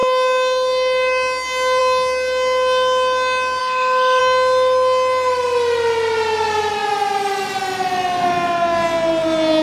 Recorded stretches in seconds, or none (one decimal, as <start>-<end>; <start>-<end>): 0.0-3.6; 4.2-9.6